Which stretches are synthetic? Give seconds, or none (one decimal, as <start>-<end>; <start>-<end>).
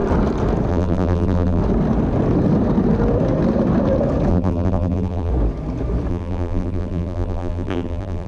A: 0.7-1.6; 4.3-5.3; 6.1-8.3